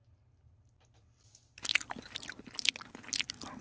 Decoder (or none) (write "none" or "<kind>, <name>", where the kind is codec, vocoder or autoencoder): none